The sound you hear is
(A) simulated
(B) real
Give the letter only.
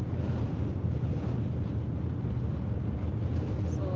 B